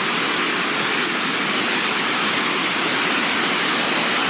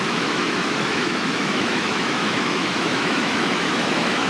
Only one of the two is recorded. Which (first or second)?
first